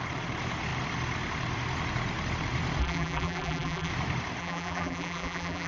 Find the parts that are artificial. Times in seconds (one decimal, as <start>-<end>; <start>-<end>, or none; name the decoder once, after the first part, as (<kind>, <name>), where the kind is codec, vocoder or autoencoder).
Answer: 2.8-3.9 (vocoder, BigVGAN v2); 4.4-5.7